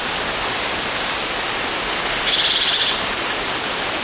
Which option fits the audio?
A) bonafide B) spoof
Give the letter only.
A